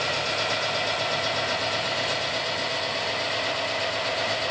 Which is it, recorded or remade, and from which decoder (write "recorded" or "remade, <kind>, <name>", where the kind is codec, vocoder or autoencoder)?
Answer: recorded